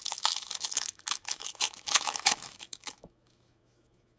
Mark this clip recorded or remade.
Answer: remade